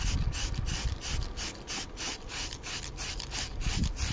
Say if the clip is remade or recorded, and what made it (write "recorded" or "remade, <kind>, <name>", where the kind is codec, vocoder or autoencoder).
recorded